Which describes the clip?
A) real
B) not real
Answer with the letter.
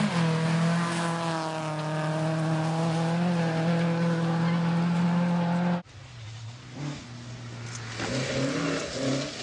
A